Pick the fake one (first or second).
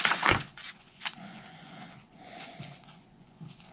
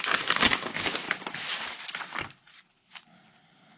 first